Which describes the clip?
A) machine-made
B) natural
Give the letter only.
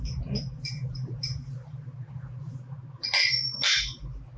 B